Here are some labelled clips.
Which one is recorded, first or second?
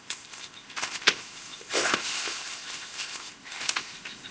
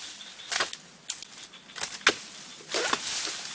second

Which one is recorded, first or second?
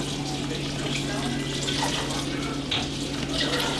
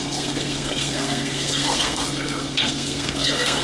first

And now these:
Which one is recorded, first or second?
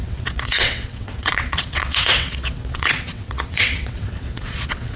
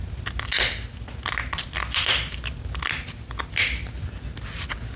second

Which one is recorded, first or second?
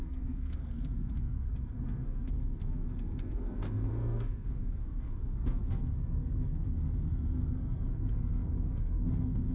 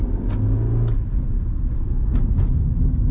second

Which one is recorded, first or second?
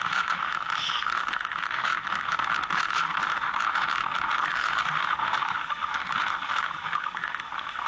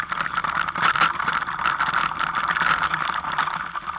second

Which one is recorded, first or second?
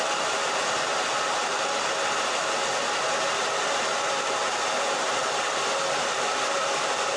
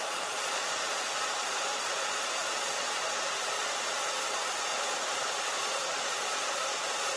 first